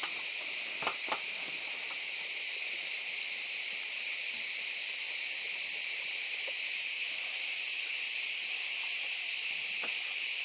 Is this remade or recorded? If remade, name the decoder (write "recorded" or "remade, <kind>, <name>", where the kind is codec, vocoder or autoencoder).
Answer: remade, vocoder, BigVGAN v2